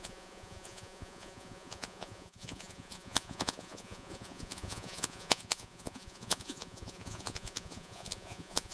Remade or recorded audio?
remade